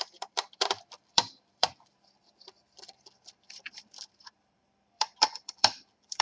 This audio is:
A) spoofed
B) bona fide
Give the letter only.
A